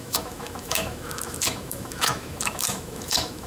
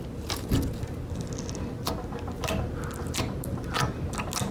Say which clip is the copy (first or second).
first